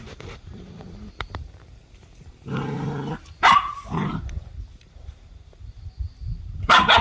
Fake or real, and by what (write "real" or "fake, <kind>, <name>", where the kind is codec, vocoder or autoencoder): fake, vocoder, BigVGAN v2